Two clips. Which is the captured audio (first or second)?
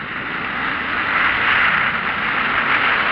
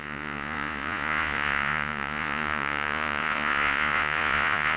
first